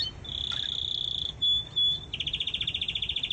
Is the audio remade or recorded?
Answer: recorded